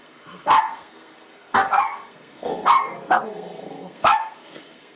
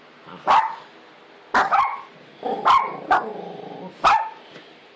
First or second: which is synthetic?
first